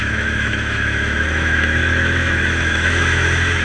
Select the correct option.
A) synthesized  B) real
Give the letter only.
A